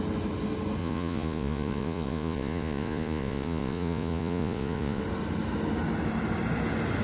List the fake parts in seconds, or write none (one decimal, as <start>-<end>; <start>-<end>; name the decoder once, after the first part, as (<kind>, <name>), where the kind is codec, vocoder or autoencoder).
0.8-5.0 (vocoder, Vocos)